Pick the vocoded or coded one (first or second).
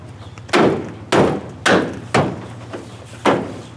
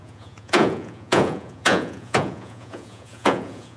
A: second